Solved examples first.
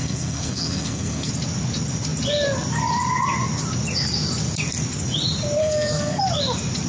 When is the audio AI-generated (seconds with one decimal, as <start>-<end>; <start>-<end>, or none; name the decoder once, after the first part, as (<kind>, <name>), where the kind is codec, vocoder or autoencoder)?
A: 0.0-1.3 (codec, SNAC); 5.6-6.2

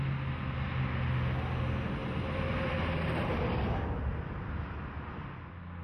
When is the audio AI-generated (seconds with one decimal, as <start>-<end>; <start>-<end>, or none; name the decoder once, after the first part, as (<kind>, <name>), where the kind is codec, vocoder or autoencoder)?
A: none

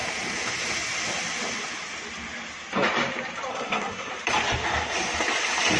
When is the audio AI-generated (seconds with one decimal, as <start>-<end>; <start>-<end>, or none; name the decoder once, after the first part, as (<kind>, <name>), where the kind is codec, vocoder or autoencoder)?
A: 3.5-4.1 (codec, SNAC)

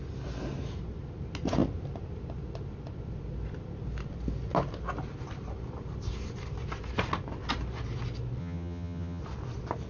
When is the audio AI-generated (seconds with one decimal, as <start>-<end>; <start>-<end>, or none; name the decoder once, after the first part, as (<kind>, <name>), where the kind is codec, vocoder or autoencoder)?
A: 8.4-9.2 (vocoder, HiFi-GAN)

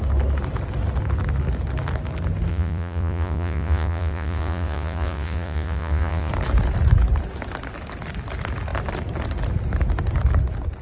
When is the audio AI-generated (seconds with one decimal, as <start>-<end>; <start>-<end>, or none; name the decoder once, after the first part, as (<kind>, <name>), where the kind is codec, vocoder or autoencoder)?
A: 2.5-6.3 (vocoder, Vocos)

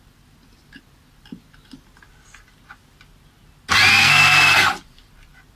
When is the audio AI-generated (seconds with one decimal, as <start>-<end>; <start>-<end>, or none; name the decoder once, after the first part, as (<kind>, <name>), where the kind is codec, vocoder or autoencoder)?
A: 3.9-4.7 (codec, SNAC)